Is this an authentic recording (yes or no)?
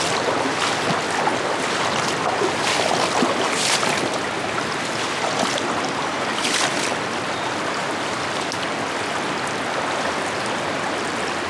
yes